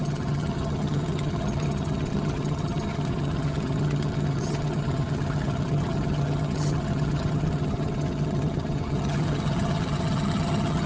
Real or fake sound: fake